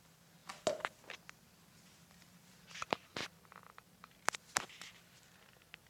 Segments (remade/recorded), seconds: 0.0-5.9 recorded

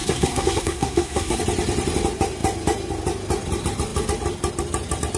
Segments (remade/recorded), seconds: 0.0-1.4 remade; 1.4-5.2 recorded

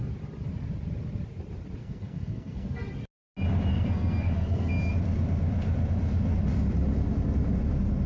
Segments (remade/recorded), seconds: 0.0-1.8 recorded; 1.8-2.8 remade; 2.8-3.7 recorded; 3.7-4.7 remade; 4.7-8.1 recorded

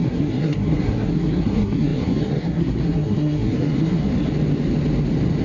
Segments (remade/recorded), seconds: 0.0-4.1 remade; 4.1-5.4 recorded

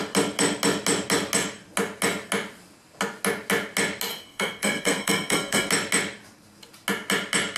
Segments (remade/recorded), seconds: 0.0-4.1 recorded; 4.1-5.7 remade; 5.7-7.6 recorded

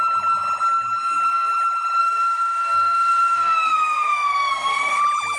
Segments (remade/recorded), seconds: 0.0-2.0 recorded; 2.0-5.0 remade; 5.0-5.4 recorded